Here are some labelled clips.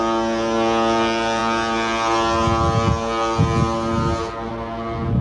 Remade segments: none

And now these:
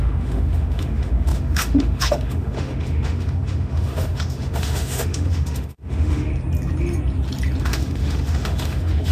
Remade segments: 0.0-6.3 (autoencoder, DAC-VAE); 7.6-9.1

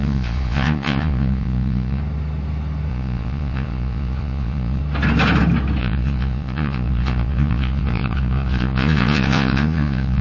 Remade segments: 0.0-2.0 (vocoder, Vocos); 2.9-4.8; 5.8-10.2

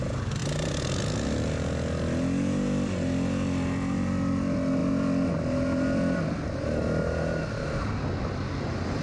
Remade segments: none

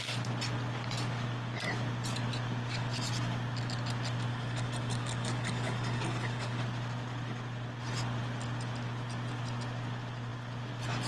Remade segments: 4.3-6.6 (codec, DAC)

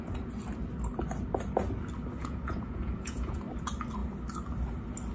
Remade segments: 2.2-3.4 (vocoder, Vocos)